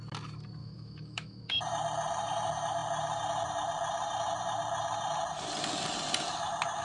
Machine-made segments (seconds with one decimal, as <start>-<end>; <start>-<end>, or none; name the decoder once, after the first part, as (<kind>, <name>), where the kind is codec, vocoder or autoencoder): 0.6-1.6 (autoencoder, DAC-VAE)